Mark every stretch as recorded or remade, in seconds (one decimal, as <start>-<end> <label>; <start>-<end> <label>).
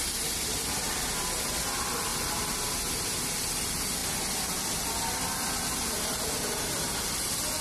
0.0-7.6 recorded